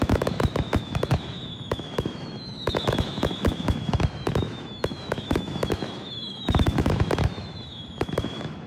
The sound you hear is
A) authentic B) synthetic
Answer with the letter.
B